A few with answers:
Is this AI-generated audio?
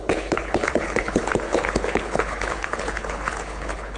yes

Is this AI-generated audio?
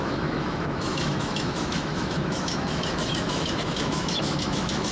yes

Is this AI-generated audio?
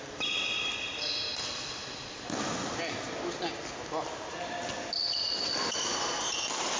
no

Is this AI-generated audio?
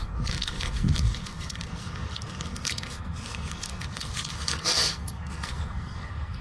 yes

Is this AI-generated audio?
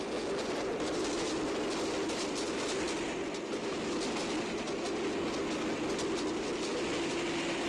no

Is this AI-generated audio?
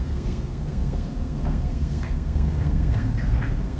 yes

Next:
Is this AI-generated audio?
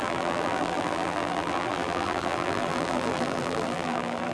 yes